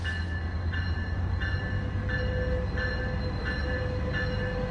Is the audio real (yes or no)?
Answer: yes